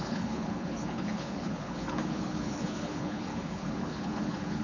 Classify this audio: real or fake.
fake